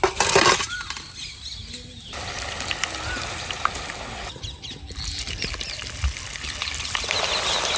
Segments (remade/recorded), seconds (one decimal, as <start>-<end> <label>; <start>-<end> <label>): 0.0-7.8 recorded